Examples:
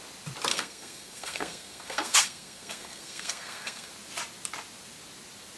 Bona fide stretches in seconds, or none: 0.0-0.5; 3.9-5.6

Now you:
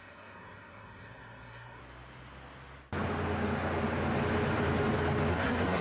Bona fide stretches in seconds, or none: 1.8-5.3

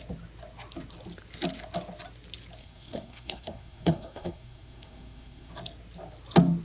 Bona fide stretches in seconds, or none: 0.0-2.6; 5.5-6.6

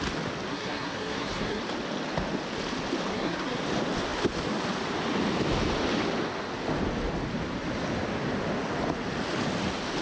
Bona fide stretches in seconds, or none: 0.0-0.5; 1.6-3.1; 3.6-10.0

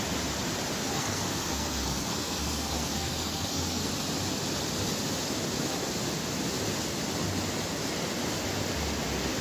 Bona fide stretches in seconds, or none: 0.0-0.9; 3.9-9.4

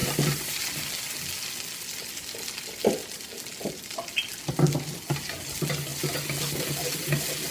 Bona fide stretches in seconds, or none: 0.0-7.5

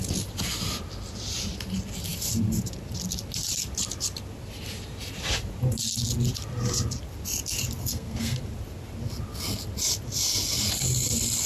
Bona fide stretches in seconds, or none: 0.0-7.8; 8.4-11.5